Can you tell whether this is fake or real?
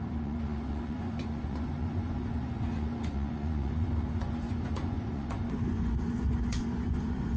fake